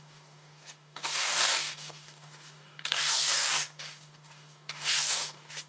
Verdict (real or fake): fake